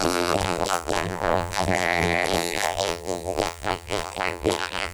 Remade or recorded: remade